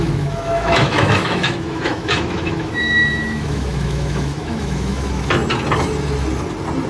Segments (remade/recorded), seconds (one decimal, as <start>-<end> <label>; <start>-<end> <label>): 0.0-5.4 remade; 5.4-6.9 recorded